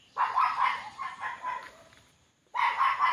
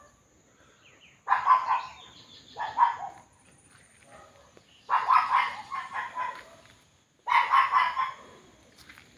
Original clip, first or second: second